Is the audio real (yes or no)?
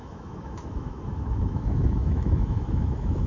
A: no